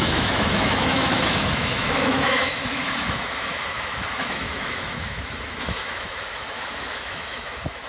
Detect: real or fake fake